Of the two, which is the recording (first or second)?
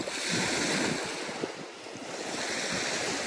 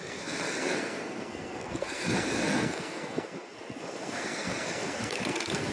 first